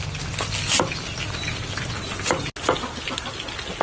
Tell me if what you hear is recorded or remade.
recorded